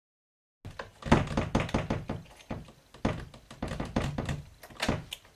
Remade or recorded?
recorded